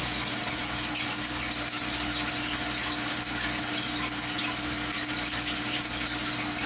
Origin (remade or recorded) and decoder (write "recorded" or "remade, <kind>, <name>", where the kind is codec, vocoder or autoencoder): recorded